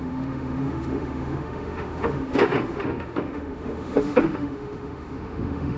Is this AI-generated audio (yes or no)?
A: yes